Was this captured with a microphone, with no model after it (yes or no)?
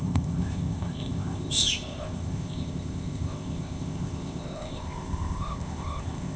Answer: no